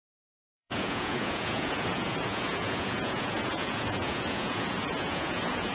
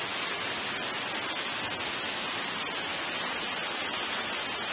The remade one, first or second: first